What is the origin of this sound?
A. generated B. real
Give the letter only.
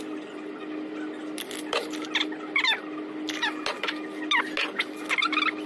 B